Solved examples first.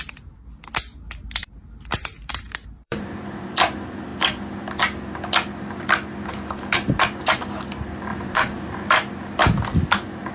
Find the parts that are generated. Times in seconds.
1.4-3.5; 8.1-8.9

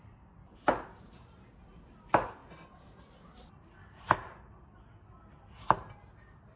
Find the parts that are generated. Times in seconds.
none

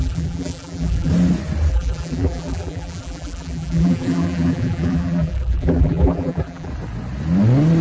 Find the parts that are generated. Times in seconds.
0.0-1.1; 1.7-6.7

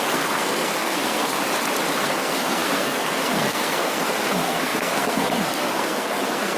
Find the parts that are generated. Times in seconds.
0.0-1.4; 2.0-6.6